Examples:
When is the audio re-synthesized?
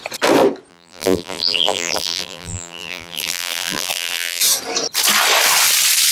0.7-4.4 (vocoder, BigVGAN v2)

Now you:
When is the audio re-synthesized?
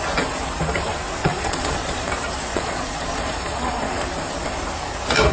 1.2-2.1 (vocoder, Vocos); 2.5-3.8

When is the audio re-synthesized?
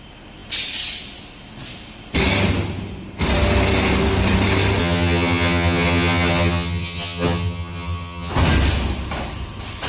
4.8-8.3 (vocoder, HiFi-GAN)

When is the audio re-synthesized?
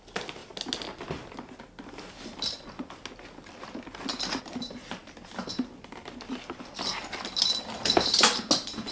none